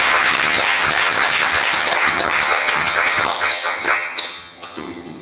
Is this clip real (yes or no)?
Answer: no